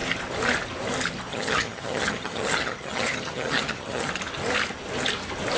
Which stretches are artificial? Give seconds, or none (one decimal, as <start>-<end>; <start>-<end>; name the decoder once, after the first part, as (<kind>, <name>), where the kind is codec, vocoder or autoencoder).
1.3-4.1 (vocoder, HiFi-GAN)